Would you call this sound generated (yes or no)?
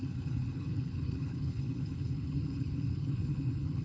yes